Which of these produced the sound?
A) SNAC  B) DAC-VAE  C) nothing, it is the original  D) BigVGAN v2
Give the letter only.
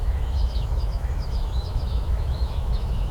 B